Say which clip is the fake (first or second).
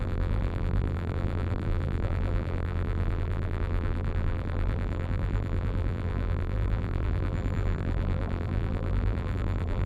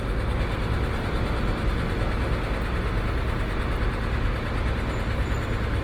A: first